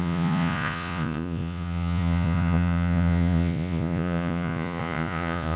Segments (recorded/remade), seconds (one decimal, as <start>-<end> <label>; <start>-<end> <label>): 0.0-5.6 remade